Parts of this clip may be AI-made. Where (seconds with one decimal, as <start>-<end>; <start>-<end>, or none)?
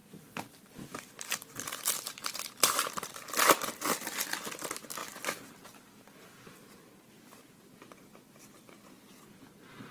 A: 0.0-4.4; 5.0-7.4